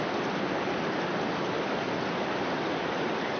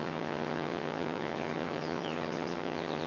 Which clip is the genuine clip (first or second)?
first